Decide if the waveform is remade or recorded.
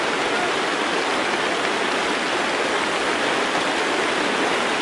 recorded